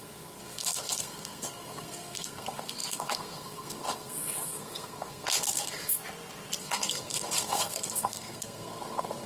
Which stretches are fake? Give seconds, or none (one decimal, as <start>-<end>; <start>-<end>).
0.0-6.0; 6.6-9.3